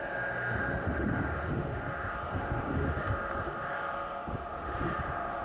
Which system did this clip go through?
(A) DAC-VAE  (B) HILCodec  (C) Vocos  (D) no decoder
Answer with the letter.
A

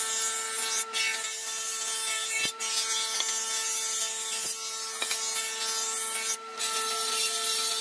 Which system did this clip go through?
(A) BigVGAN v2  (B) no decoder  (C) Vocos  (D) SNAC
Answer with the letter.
B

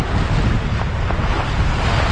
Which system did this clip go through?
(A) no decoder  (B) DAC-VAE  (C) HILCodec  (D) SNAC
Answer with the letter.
A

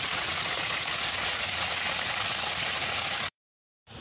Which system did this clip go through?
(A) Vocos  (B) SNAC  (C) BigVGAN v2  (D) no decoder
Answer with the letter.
A